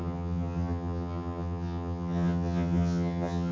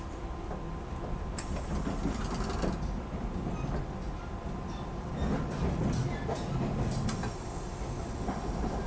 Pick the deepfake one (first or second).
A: first